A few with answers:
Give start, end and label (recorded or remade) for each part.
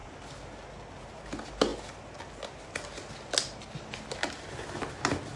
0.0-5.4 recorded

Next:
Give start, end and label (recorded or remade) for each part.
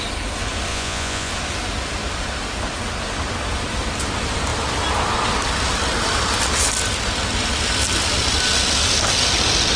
0.0-0.7 recorded; 0.7-1.3 remade; 1.3-9.8 recorded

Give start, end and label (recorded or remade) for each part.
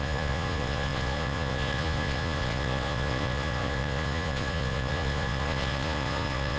0.0-6.6 remade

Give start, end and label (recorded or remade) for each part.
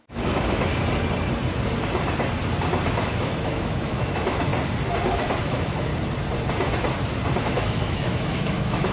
0.0-0.7 remade; 0.7-3.0 recorded; 3.0-4.5 remade; 4.5-5.4 recorded; 5.4-5.9 remade; 5.9-7.4 recorded; 7.4-8.9 remade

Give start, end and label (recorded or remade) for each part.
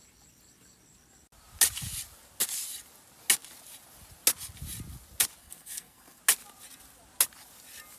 0.0-5.4 recorded; 5.4-6.2 remade; 6.2-8.0 recorded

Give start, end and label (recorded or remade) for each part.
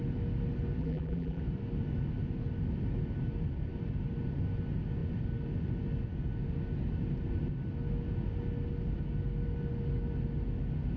0.0-0.8 recorded; 0.8-1.4 remade; 1.4-11.0 recorded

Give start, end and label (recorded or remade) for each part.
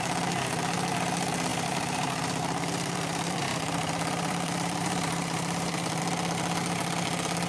0.0-1.5 recorded; 1.5-6.0 remade; 6.0-7.5 recorded